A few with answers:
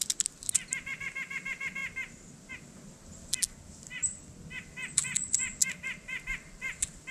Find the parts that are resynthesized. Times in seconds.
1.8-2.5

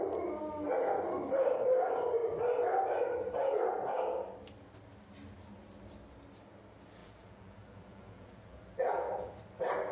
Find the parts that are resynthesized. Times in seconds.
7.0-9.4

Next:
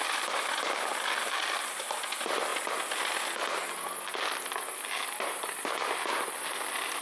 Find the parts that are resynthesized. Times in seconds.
none

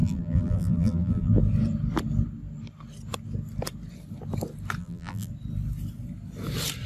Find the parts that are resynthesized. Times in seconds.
0.0-1.4; 4.8-5.3

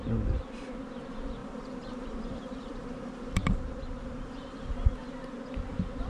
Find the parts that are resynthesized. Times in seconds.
1.4-5.1